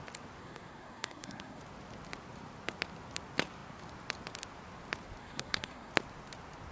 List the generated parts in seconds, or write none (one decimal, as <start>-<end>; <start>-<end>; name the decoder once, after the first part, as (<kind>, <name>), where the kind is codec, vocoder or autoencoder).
0.4-1.6 (codec, SNAC); 5.2-5.9